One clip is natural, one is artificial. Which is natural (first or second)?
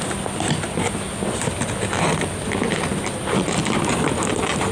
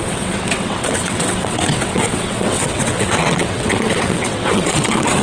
first